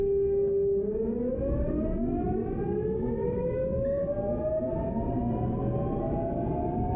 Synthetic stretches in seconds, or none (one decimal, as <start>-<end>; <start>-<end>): 3.4-4.0